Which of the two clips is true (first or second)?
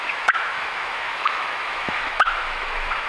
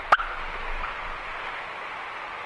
second